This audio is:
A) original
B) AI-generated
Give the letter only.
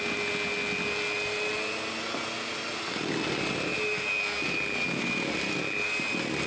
A